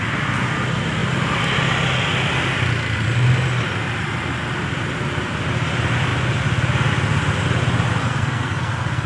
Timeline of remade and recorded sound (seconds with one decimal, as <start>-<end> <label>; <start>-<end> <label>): 0.0-8.0 recorded; 8.0-9.1 remade